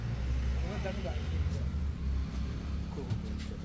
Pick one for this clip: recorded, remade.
recorded